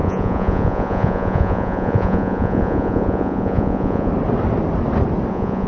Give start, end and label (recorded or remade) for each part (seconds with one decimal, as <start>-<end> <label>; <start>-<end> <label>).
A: 0.0-4.1 remade; 4.1-5.3 recorded; 5.3-5.7 remade

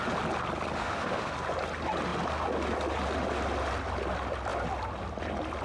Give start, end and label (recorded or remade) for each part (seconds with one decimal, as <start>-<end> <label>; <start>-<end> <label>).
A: 0.0-0.8 recorded; 0.8-1.3 remade; 1.3-5.6 recorded

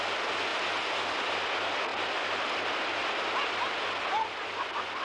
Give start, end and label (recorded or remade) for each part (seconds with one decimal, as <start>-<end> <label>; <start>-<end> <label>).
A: 0.0-5.0 recorded

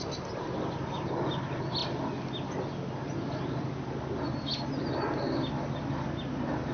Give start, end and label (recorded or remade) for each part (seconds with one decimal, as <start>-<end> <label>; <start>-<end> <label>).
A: 0.0-6.7 recorded

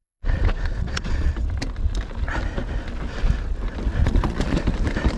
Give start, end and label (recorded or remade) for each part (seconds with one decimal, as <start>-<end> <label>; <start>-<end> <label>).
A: 0.0-1.3 remade; 1.3-4.0 recorded; 4.0-4.6 remade; 4.6-5.2 recorded

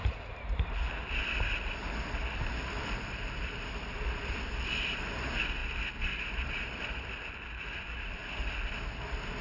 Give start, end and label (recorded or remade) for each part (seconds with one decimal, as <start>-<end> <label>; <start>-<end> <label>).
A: 0.0-1.2 remade; 1.2-2.2 recorded; 2.2-5.0 remade; 5.0-5.6 recorded; 5.6-8.7 remade; 8.7-9.4 recorded